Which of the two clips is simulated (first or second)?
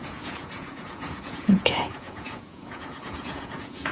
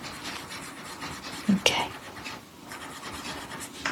first